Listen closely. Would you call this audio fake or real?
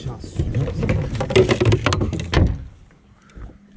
real